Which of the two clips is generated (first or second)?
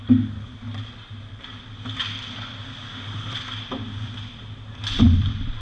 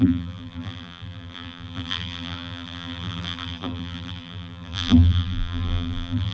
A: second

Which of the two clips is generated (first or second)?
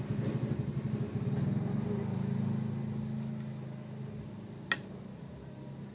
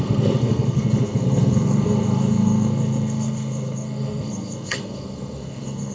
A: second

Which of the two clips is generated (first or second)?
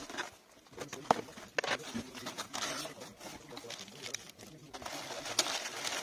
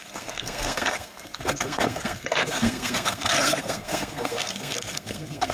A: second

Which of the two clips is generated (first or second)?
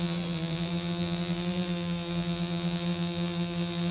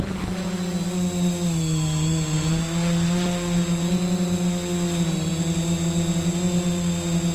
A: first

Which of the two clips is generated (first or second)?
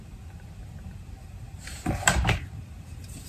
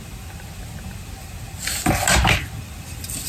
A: first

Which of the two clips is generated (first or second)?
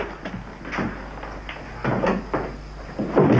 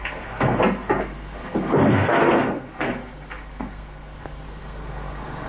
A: second